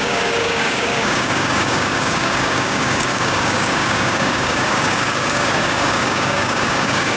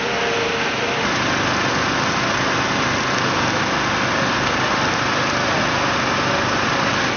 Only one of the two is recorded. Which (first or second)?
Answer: second